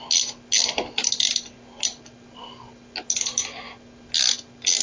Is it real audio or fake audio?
real